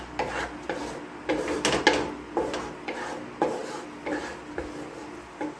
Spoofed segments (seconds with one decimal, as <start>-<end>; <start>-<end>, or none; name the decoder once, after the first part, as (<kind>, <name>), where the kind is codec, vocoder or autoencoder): none